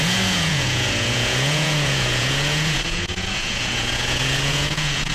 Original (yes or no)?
no